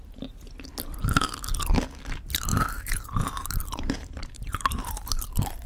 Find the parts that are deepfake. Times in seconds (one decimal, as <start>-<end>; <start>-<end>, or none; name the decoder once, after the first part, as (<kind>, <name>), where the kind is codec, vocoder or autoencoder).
2.5-5.7 (vocoder, BigVGAN v2)